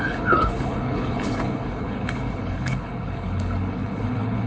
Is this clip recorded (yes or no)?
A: no